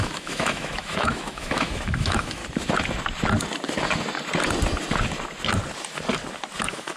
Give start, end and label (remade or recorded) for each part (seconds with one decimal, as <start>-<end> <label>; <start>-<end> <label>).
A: 0.0-2.4 remade; 2.4-6.6 recorded; 6.6-7.0 remade